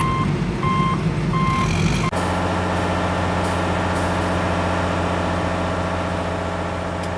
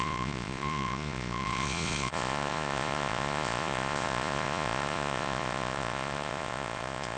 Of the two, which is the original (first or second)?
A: first